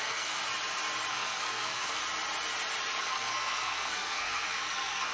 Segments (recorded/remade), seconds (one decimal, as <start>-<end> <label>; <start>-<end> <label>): 0.0-0.4 remade; 0.4-1.1 recorded; 1.1-2.0 remade; 2.0-3.0 recorded; 3.0-5.1 remade